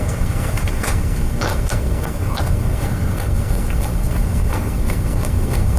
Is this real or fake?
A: fake